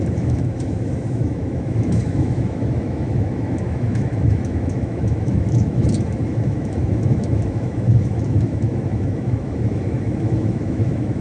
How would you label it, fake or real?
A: fake